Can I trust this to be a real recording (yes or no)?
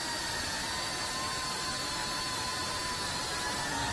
yes